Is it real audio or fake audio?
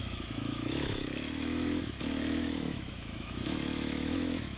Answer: fake